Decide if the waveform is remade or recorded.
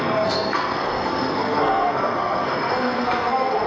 remade